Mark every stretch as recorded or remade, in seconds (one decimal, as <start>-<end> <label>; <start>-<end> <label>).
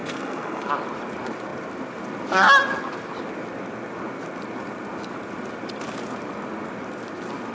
0.0-0.7 remade; 0.7-7.5 recorded